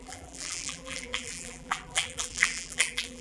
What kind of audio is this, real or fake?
fake